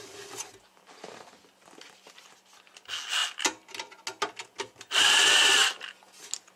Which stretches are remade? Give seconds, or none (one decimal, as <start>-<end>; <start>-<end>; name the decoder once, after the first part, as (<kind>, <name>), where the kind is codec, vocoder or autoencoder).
none